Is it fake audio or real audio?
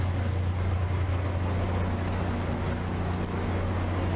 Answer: real